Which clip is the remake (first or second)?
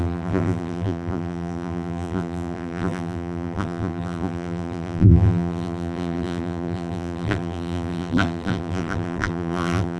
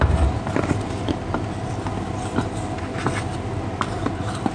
first